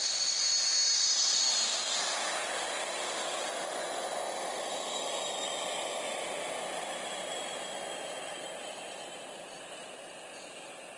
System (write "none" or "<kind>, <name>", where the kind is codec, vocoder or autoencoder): none